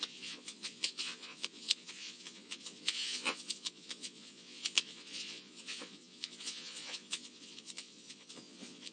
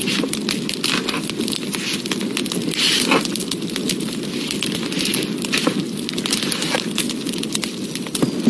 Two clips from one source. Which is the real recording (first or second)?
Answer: second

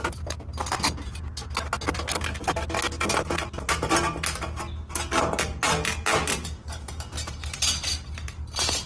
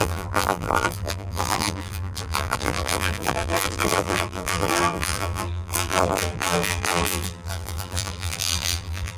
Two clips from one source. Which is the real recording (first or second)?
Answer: first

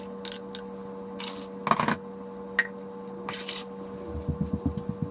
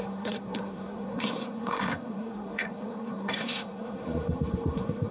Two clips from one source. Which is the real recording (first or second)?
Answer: first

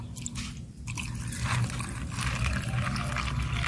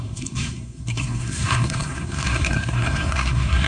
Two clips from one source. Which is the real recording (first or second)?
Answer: first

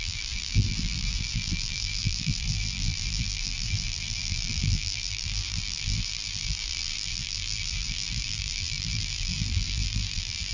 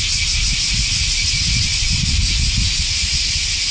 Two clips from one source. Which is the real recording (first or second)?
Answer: second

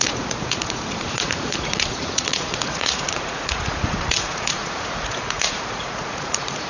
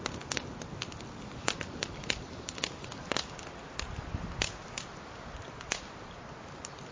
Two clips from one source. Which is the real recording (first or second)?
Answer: second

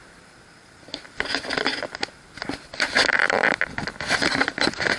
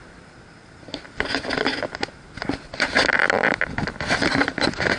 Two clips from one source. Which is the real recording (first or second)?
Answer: second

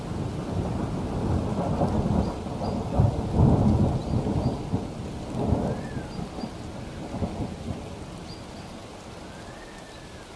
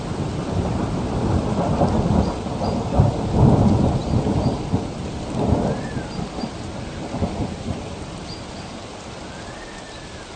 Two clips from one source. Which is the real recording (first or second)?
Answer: first